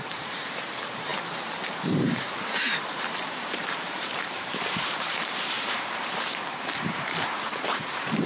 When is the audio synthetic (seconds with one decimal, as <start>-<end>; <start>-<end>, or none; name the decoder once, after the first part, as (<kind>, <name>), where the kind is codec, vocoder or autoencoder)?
0.0-1.1 (vocoder, BigVGAN v2); 1.9-8.3